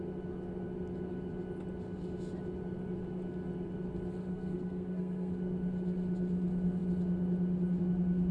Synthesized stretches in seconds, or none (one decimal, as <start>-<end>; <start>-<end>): 4.3-5.3